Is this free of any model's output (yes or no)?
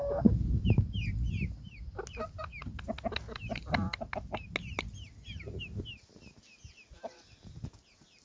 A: yes